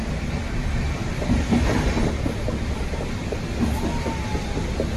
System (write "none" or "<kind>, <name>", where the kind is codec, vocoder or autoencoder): none